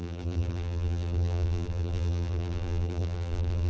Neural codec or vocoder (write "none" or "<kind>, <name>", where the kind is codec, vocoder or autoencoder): vocoder, BigVGAN v2